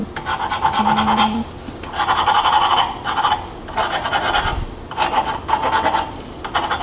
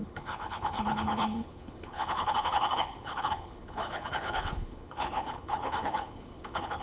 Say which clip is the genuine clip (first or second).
first